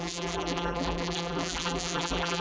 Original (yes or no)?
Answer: no